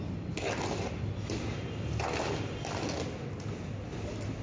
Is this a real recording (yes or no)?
yes